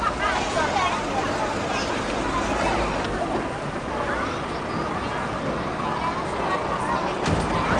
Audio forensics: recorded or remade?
recorded